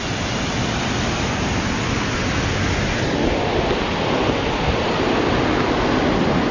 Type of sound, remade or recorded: recorded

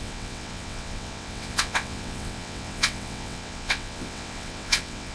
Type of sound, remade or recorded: remade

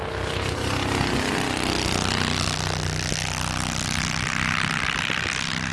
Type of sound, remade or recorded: recorded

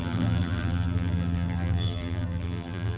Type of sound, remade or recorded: remade